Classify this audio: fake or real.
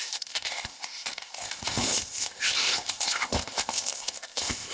fake